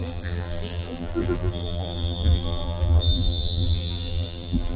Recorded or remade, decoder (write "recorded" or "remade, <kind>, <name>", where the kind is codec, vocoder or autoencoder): remade, vocoder, BigVGAN v2